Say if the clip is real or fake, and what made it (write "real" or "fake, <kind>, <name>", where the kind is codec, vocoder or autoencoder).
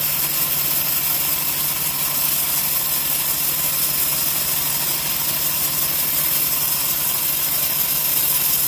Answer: real